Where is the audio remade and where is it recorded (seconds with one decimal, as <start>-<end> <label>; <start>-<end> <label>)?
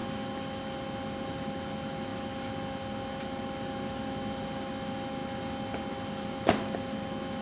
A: 0.0-7.4 recorded